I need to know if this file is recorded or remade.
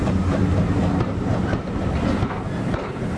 recorded